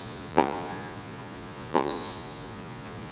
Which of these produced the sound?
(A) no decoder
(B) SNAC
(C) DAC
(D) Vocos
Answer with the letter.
D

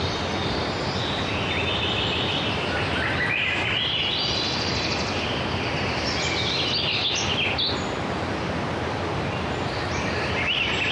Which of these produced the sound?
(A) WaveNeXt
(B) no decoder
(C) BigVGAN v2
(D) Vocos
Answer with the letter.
B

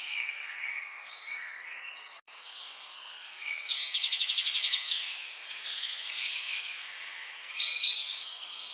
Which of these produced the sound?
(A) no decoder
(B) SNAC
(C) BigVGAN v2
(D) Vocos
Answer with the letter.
B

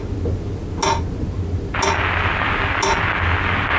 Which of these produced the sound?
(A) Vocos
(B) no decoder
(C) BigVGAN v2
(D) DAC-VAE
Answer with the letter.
B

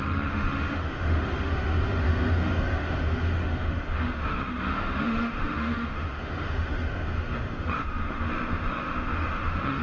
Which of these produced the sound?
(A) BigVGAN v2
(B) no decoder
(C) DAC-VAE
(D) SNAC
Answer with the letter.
C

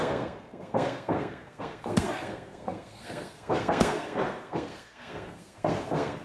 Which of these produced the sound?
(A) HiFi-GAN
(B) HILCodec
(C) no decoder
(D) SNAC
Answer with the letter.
D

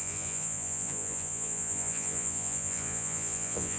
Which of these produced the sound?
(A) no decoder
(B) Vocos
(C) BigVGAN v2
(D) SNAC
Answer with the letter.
B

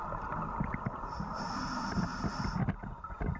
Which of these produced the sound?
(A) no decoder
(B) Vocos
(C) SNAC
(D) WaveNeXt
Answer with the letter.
A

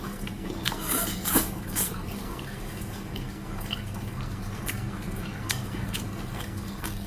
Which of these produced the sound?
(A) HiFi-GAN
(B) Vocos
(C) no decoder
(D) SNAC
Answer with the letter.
D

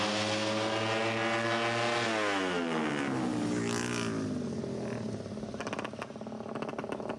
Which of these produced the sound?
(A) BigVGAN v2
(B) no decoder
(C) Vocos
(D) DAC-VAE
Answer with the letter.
B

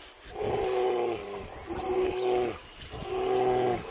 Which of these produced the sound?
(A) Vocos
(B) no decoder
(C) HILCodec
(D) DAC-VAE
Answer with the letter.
B